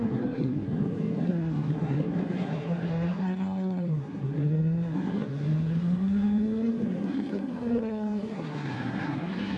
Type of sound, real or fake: fake